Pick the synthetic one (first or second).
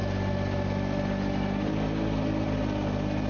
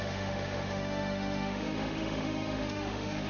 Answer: second